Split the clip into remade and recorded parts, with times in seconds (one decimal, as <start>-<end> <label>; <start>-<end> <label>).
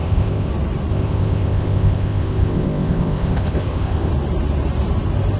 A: 0.0-0.5 remade; 0.5-0.9 recorded; 0.9-4.1 remade; 4.1-5.4 recorded